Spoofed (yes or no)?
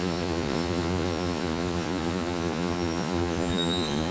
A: yes